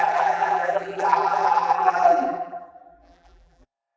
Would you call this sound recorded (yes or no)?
no